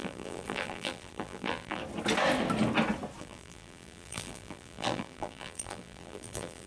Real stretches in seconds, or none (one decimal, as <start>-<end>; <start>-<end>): 1.8-3.2

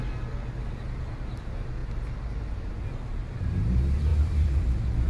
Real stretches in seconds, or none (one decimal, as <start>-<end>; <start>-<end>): 0.0-4.1

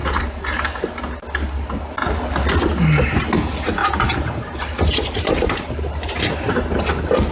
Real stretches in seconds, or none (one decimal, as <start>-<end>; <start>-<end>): 0.7-2.0; 2.5-3.8; 6.5-7.3

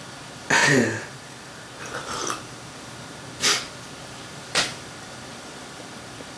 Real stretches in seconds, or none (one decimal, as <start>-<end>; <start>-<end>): 0.0-0.6; 1.8-4.0; 5.8-6.4

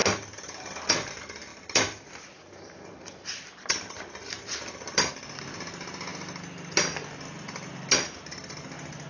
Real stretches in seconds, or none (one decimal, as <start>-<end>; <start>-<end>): 1.1-1.5; 5.1-9.1